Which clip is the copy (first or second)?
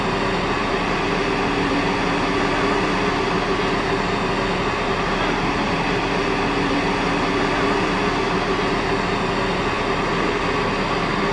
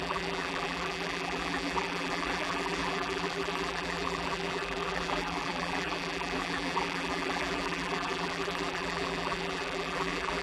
second